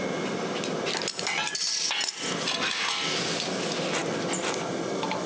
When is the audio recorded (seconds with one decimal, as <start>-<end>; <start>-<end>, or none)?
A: 0.0-5.3